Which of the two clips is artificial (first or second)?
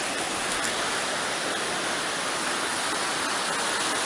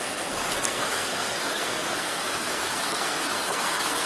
second